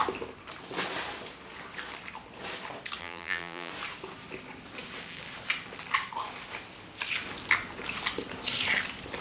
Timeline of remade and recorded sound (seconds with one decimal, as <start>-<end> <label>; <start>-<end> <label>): 0.0-3.0 recorded; 3.0-3.7 remade; 3.7-9.2 recorded